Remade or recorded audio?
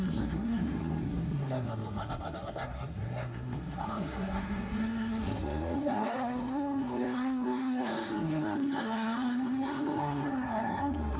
remade